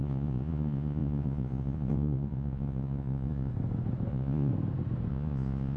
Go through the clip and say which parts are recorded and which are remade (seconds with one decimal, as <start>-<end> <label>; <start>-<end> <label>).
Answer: 0.0-3.5 remade; 3.5-4.1 recorded; 4.1-4.5 remade; 4.5-5.1 recorded; 5.1-5.8 remade